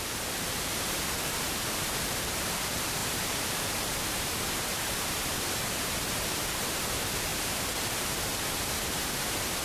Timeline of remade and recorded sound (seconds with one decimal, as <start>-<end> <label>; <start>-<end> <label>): 0.0-3.0 remade; 3.0-3.7 recorded; 3.7-9.6 remade